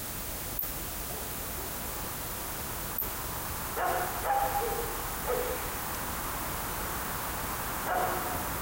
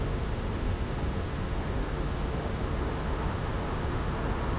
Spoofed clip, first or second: second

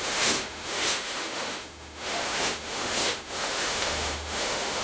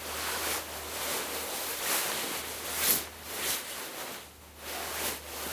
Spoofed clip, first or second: first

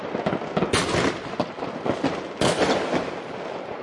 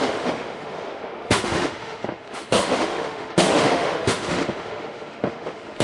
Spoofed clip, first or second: second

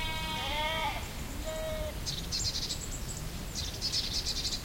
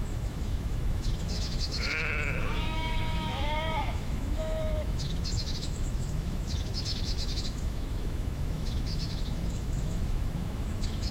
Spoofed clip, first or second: second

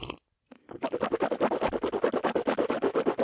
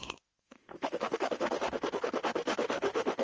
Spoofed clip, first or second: second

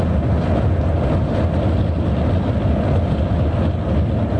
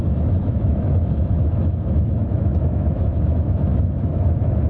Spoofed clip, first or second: second